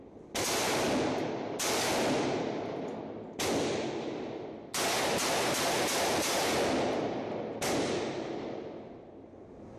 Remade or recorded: recorded